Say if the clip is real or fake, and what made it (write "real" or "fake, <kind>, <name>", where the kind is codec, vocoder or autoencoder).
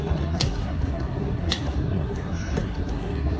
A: fake, codec, SNAC